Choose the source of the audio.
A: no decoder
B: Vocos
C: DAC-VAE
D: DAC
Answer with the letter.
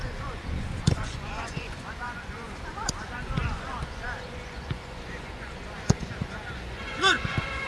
B